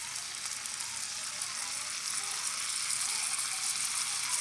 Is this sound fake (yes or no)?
no